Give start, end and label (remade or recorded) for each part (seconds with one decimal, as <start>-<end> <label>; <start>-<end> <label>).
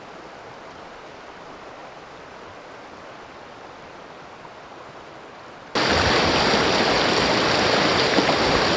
0.0-8.8 recorded